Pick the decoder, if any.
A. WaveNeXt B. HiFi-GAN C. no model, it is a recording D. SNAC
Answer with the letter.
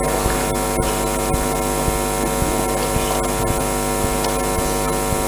C